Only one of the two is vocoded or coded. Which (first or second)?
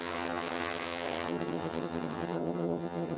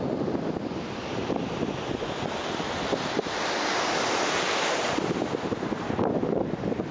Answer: first